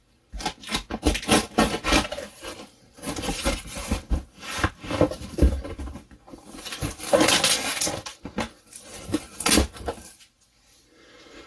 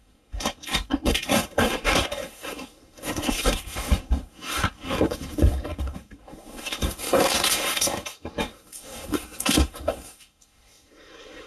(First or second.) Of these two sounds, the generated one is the second